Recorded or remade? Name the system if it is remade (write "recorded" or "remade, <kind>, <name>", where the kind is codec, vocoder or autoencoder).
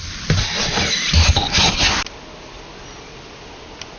recorded